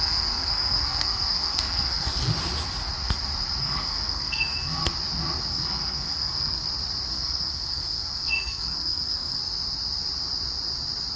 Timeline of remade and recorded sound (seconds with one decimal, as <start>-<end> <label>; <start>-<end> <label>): 0.0-2.3 remade; 2.3-3.6 recorded; 3.6-4.8 remade; 4.8-5.5 recorded; 5.5-6.6 remade; 6.6-7.1 recorded; 7.1-9.4 remade; 9.4-11.2 recorded

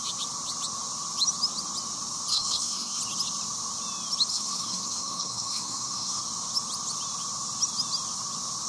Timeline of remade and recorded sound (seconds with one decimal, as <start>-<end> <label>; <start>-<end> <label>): 0.0-2.3 recorded; 2.3-3.0 remade; 3.0-4.3 recorded; 4.3-6.2 remade; 6.2-8.7 recorded

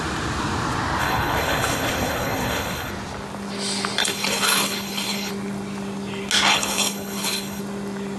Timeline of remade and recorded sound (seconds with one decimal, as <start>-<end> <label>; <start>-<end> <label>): 0.0-1.0 recorded; 1.0-2.9 remade; 2.9-4.0 recorded; 4.0-5.3 remade; 5.3-6.5 recorded; 6.5-7.6 remade; 7.6-8.2 recorded

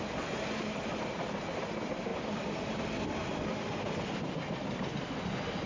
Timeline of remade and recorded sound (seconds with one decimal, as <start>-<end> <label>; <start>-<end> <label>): 0.0-5.7 recorded

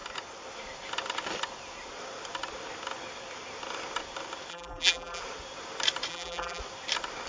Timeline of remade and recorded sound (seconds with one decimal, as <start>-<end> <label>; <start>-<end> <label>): 0.0-4.5 recorded; 4.5-5.2 remade; 5.2-6.1 recorded; 6.1-6.6 remade; 6.6-7.3 recorded

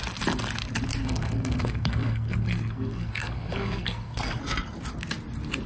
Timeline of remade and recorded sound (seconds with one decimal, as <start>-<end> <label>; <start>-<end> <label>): 0.0-1.0 recorded; 1.0-4.4 remade; 4.4-5.7 recorded

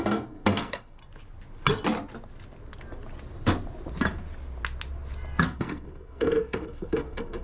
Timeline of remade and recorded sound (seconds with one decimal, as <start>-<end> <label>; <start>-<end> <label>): 0.0-1.0 remade; 1.0-5.4 recorded; 5.4-7.4 remade

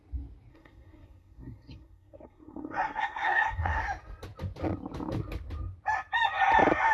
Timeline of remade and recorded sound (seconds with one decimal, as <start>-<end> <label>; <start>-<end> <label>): 0.0-0.5 recorded; 0.5-3.8 remade; 3.8-6.9 recorded